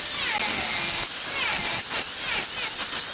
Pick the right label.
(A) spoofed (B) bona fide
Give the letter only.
B